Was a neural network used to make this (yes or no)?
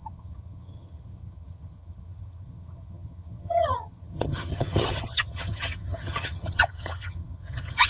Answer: yes